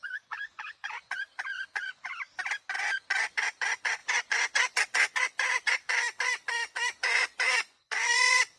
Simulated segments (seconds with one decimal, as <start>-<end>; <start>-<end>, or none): 0.0-2.1; 2.7-8.6